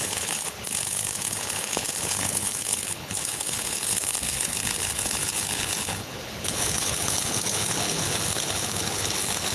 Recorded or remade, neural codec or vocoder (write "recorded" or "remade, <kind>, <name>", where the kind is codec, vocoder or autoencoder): remade, codec, HILCodec